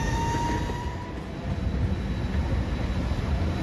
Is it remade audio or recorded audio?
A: recorded